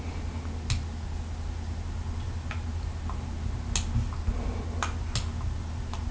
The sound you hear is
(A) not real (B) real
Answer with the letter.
B